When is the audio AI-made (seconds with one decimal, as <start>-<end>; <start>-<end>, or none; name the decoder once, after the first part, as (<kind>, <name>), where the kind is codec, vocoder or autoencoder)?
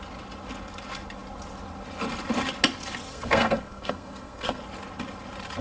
3.1-4.6 (codec, SNAC)